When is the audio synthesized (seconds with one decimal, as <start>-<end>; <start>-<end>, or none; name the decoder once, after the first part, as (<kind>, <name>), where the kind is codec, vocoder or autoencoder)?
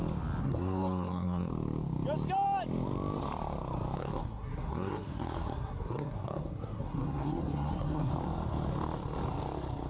0.4-1.5 (codec, SNAC); 4.0-8.1